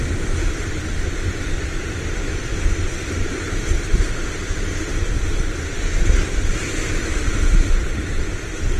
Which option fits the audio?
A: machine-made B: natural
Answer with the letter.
B